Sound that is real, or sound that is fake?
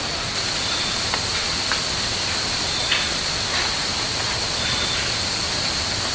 real